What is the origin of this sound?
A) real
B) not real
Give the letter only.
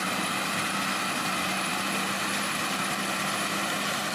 A